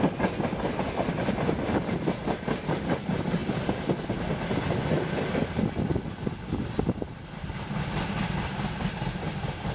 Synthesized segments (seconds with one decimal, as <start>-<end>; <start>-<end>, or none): none